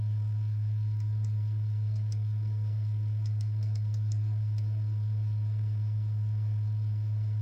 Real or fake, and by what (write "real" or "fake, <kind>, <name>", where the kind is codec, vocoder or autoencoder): fake, codec, SNAC